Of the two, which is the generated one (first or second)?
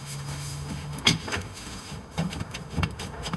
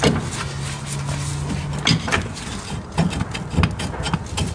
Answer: first